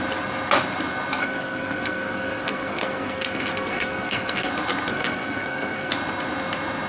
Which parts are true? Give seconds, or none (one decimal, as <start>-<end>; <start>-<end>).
0.0-1.2; 4.5-4.9; 5.9-6.9